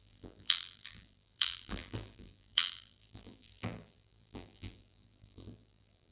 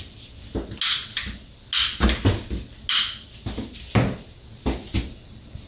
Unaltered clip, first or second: second